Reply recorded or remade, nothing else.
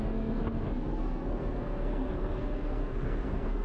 remade